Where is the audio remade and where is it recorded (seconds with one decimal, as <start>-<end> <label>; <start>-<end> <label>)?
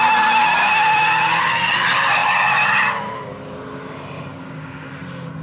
0.0-4.3 recorded; 4.3-5.0 remade; 5.0-5.4 recorded